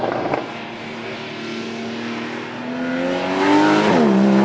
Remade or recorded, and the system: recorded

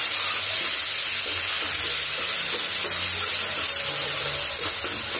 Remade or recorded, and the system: recorded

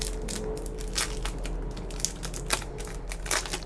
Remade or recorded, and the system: recorded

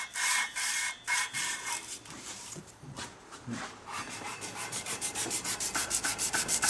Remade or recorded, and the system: remade, vocoder, BigVGAN v2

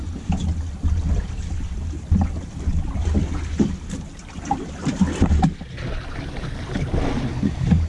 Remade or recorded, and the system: recorded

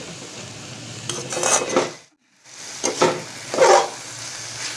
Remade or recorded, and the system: recorded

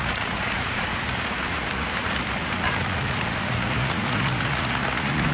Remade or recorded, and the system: remade, vocoder, Vocos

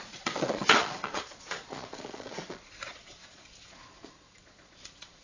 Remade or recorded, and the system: remade, vocoder, Vocos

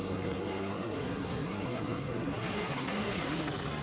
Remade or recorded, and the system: remade, codec, SNAC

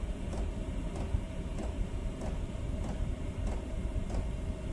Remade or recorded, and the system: recorded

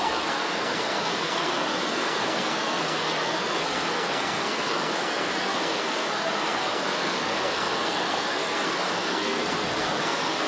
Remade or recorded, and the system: remade, codec, SNAC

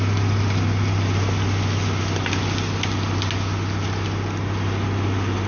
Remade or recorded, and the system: recorded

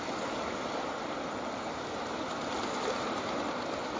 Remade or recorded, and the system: recorded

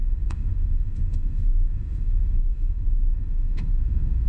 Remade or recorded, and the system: remade, autoencoder, DAC-VAE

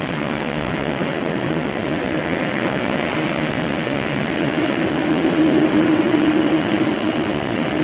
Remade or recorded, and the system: remade, vocoder, WaveNeXt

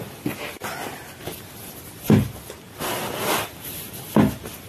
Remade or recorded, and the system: recorded